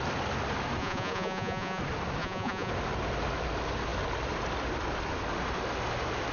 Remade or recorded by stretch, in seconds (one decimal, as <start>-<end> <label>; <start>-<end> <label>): 0.0-0.8 recorded; 0.8-1.8 remade; 1.8-2.2 recorded; 2.2-2.7 remade; 2.7-6.3 recorded